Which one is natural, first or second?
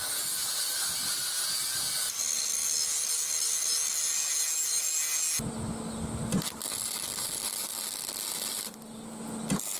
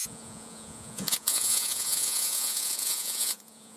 first